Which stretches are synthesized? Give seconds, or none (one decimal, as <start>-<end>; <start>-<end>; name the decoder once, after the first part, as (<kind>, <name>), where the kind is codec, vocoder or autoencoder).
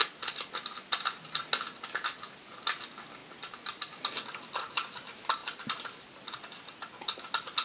3.2-4.0 (vocoder, BigVGAN v2); 5.4-6.8